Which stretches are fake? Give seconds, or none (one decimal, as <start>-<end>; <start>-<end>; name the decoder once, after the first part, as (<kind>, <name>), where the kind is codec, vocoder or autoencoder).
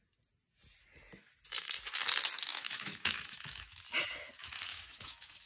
2.5-3.8 (autoencoder, DAC-VAE); 4.4-5.5